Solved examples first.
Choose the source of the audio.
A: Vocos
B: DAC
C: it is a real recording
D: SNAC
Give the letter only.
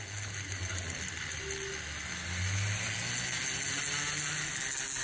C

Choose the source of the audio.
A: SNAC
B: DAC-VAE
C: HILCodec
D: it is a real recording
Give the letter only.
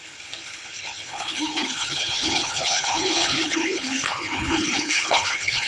C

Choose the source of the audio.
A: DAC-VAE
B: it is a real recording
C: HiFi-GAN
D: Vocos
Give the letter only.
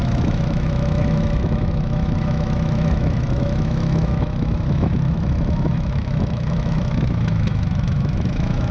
A